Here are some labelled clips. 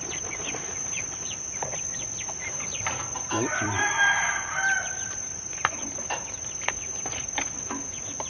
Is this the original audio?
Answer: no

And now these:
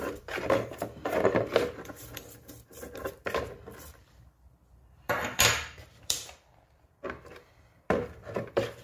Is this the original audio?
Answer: no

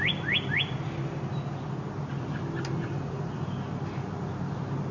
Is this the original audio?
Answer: yes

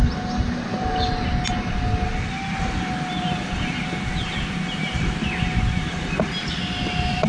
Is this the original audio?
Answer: yes